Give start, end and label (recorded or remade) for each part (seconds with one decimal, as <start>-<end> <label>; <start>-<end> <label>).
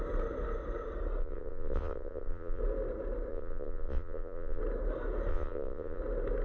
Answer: 0.0-1.2 recorded; 1.2-2.6 remade; 2.6-3.3 recorded; 3.3-4.6 remade; 4.6-5.3 recorded; 5.3-6.0 remade; 6.0-6.4 recorded